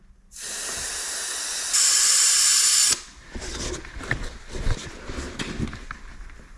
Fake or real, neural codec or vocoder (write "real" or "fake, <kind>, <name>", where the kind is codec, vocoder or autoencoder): real